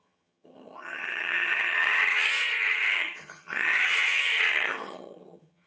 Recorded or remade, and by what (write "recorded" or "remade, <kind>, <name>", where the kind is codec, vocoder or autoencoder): remade, vocoder, HiFi-GAN